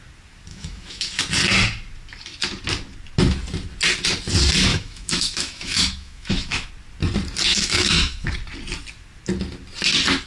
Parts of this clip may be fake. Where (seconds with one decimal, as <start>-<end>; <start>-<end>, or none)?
0.5-1.2; 4.7-6.7; 7.5-8.3